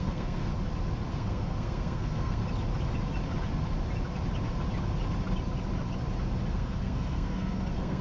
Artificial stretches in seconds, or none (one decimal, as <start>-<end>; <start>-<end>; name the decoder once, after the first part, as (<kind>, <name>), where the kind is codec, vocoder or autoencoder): 0.0-0.5 (codec, SNAC); 1.1-2.4; 6.5-8.0

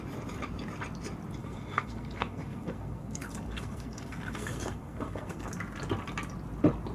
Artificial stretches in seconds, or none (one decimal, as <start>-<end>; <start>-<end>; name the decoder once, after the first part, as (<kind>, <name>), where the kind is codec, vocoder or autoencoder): 1.4-5.5 (codec, SNAC)

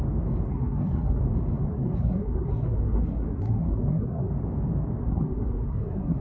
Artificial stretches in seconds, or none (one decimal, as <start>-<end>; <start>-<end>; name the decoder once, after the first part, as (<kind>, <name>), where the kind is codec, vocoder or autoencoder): 0.5-1.2 (codec, SNAC); 1.7-4.3; 5.0-6.2

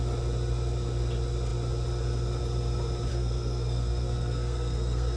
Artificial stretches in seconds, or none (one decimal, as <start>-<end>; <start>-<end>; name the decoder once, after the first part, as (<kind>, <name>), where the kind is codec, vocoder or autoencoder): 3.1-5.2 (codec, SNAC)

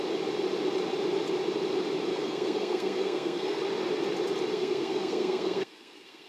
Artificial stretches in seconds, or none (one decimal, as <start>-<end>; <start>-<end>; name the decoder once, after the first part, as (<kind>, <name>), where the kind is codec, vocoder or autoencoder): 2.1-3.6 (codec, SNAC); 4.5-6.3

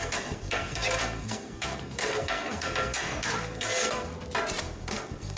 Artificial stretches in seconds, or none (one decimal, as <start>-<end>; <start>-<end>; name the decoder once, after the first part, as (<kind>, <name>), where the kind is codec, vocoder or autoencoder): 0.0-4.1 (codec, SNAC); 4.6-5.4

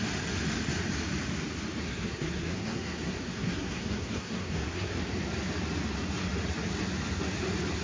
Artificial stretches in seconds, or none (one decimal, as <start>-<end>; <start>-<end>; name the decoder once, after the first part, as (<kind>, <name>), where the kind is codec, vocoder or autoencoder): 1.8-5.0 (codec, SNAC)